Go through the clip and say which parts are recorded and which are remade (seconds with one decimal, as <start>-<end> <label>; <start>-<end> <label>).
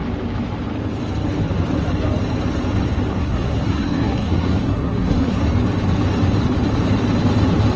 0.0-3.2 recorded; 3.2-5.4 remade; 5.4-7.8 recorded